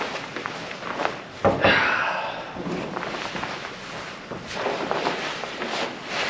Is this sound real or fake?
real